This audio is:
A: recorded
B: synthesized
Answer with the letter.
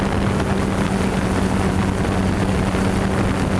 A